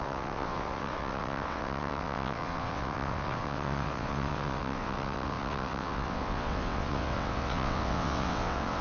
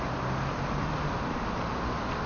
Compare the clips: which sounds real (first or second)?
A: second